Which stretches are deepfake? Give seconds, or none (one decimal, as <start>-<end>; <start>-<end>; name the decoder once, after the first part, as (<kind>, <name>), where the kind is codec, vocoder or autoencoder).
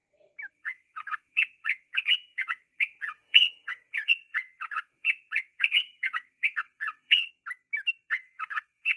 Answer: 0.5-7.3 (vocoder, WaveNeXt); 8.1-9.0